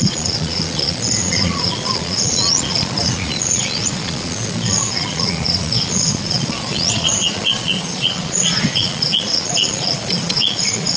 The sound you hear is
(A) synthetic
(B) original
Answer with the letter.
A